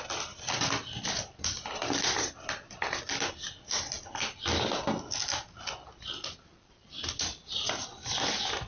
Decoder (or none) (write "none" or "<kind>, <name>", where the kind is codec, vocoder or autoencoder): none